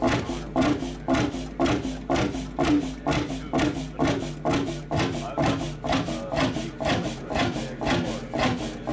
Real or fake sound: real